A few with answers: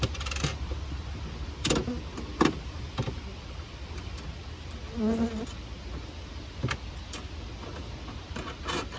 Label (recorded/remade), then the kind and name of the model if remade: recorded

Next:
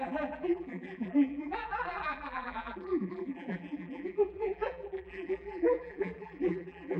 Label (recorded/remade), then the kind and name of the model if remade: remade, vocoder, BigVGAN v2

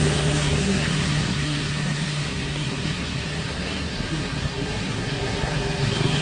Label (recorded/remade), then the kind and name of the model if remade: remade, codec, SNAC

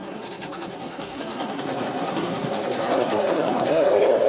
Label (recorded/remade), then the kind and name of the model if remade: remade, codec, SNAC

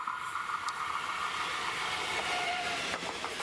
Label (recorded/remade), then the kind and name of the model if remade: remade, vocoder, BigVGAN v2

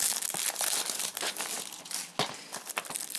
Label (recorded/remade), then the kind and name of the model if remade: recorded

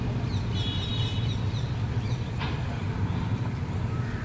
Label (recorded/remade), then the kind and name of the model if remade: recorded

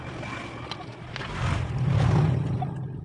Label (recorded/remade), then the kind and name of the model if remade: recorded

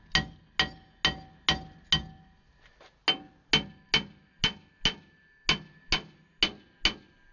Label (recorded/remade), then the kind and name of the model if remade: recorded